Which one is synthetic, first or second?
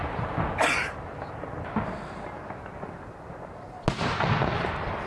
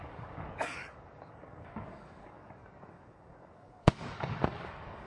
second